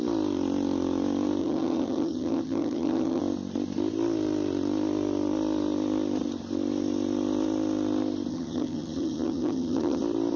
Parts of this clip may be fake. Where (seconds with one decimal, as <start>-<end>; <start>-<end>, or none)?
1.4-3.2; 8.3-10.0